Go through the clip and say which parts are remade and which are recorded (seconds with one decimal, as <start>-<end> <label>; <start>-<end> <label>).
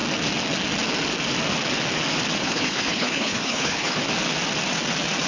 0.0-2.4 recorded; 2.4-4.0 remade; 4.0-5.3 recorded